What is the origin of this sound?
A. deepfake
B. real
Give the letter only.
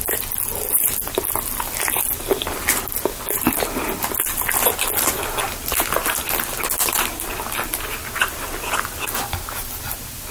B